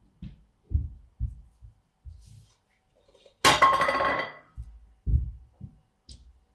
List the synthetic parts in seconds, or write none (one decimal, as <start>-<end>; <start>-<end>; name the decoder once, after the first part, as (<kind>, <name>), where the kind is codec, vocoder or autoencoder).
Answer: none